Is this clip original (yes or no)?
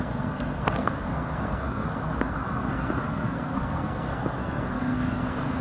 no